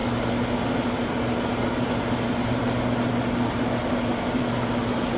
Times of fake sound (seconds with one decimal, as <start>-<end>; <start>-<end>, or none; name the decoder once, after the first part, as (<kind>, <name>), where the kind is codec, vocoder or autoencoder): none